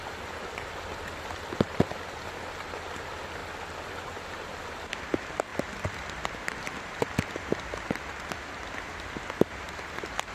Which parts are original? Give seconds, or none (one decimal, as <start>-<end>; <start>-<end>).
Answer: 0.0-5.5; 6.3-10.3